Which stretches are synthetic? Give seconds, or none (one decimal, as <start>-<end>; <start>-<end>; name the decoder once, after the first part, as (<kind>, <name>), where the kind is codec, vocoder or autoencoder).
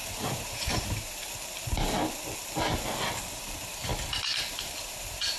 0.0-1.2 (vocoder, BigVGAN v2); 3.3-3.9; 4.6-5.4